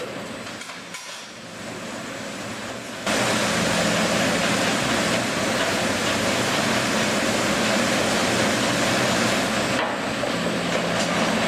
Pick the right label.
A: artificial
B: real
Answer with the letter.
B